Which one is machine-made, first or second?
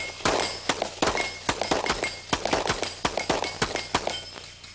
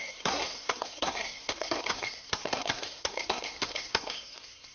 second